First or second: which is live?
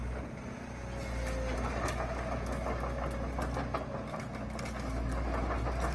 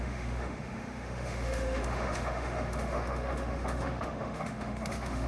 first